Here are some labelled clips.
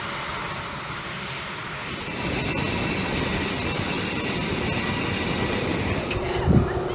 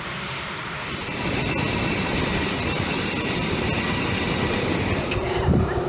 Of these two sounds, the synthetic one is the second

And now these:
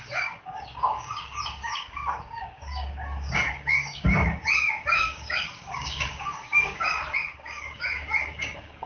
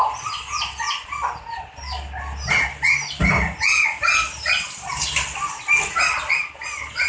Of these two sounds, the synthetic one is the first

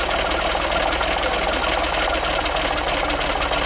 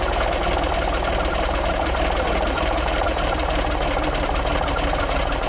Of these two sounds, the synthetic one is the second